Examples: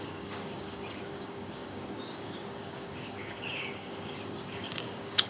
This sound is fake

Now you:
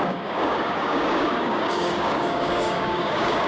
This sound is fake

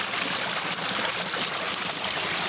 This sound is real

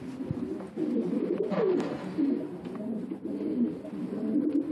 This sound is real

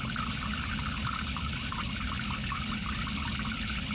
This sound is real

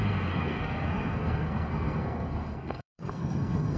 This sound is fake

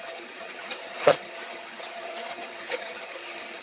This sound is fake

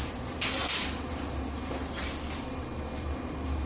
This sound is real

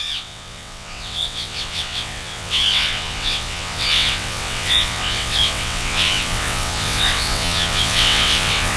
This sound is fake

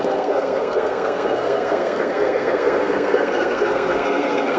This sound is fake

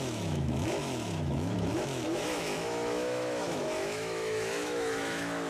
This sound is fake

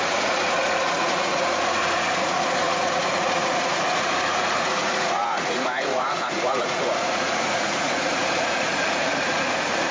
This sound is fake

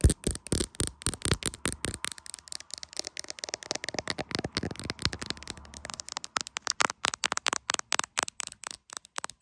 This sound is real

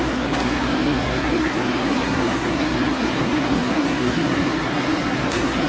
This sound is fake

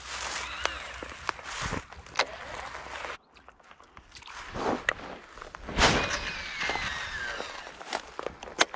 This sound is real